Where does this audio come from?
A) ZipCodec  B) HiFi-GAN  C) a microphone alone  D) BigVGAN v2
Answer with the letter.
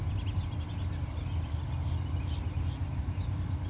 C